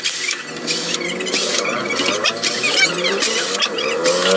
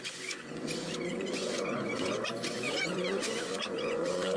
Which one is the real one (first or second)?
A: first